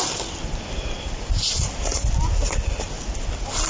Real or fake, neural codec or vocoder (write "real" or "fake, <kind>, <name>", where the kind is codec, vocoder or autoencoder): real